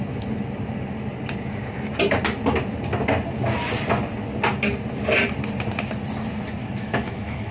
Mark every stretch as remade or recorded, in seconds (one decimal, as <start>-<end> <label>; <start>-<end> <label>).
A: 0.0-6.6 recorded; 6.6-7.5 remade